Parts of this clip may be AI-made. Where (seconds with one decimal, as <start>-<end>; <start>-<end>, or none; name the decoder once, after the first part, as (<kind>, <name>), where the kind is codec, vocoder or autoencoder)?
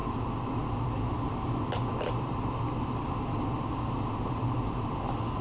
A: none